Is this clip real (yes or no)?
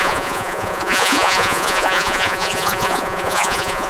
no